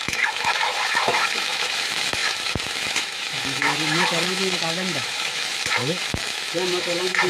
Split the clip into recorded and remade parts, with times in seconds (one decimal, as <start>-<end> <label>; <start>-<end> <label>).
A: 0.0-7.3 remade